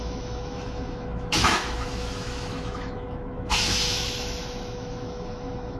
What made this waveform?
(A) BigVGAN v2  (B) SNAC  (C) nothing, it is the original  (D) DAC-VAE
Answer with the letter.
D